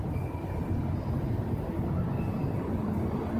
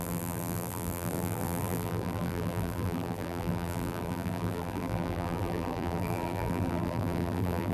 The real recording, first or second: first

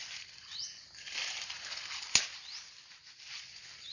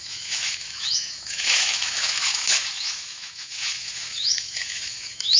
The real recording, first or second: first